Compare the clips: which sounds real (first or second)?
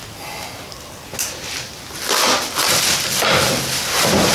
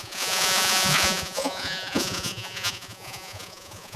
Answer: first